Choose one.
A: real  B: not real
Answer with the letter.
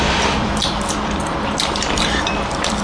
B